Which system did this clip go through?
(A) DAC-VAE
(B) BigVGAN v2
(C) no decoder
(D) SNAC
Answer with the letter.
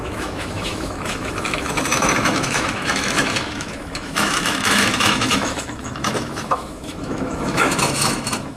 A